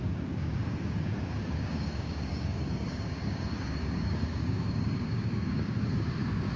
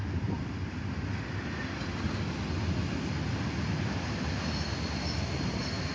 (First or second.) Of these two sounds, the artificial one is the first